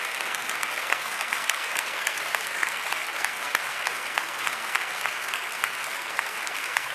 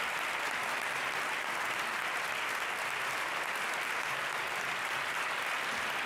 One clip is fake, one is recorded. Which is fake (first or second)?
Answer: first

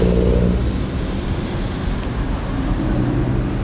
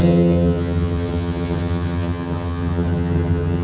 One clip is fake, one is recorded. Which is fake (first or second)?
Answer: second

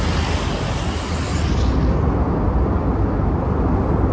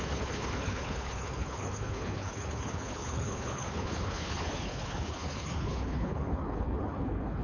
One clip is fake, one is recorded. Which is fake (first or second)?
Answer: second